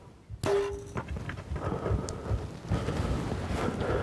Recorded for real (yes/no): yes